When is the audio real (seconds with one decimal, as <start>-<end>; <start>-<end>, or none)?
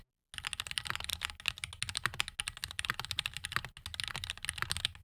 0.0-5.0